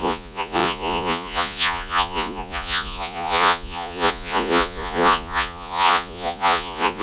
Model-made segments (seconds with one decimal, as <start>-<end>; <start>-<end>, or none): 0.0-7.0